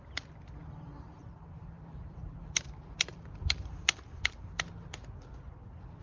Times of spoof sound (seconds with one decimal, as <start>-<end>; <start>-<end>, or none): 0.6-4.2